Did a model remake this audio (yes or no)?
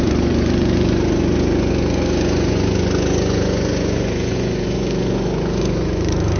yes